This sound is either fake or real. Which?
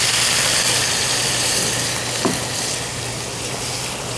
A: real